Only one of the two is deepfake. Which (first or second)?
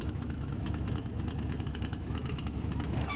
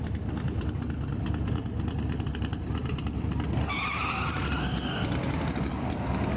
first